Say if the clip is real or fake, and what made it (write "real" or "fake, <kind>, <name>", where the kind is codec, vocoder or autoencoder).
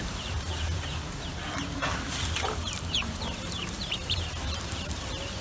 fake, vocoder, BigVGAN v2